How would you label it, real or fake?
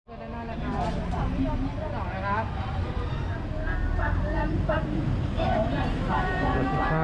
real